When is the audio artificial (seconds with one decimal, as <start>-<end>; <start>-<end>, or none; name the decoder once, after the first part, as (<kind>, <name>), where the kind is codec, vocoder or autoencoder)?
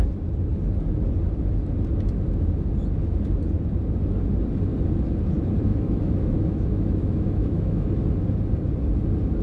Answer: 5.7-7.9 (autoencoder, DAC-VAE)